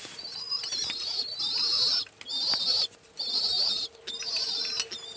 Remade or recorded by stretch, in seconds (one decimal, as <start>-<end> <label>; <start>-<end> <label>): 0.0-5.2 recorded